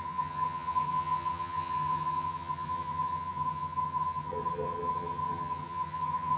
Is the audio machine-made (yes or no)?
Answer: yes